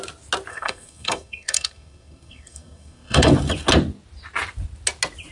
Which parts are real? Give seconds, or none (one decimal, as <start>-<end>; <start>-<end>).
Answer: 0.0-0.5; 3.3-5.3